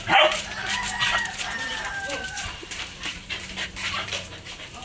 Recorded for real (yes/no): no